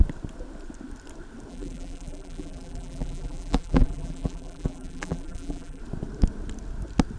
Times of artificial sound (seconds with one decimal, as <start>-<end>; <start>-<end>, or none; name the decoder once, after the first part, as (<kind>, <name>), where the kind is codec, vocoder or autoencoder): 1.5-5.8 (vocoder, BigVGAN v2)